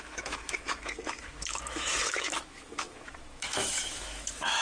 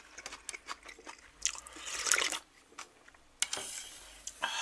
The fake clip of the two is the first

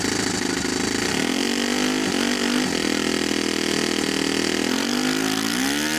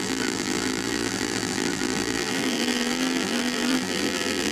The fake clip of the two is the second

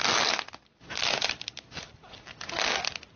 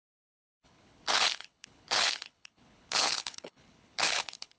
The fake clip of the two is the second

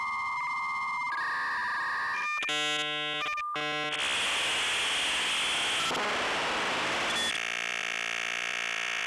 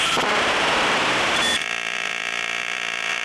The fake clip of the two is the second